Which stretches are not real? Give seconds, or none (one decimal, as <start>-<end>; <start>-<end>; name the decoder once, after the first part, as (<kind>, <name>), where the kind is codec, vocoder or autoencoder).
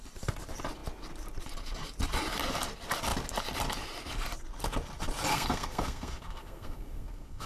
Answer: 5.3-7.5 (codec, SNAC)